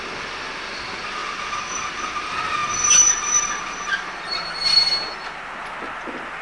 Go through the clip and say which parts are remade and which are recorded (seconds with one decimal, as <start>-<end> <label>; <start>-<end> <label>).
0.0-6.4 recorded